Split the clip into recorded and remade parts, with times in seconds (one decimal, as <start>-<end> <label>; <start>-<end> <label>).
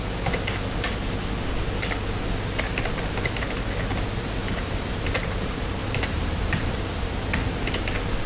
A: 0.0-4.4 recorded; 4.4-7.1 remade; 7.1-8.3 recorded